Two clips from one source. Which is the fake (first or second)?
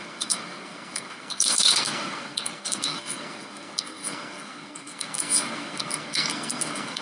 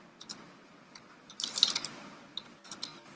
first